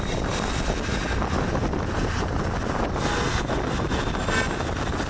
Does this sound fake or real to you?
real